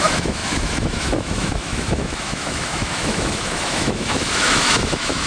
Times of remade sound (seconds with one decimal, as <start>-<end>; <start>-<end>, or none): 0.0-5.3